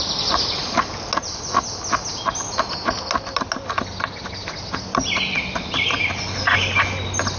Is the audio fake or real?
real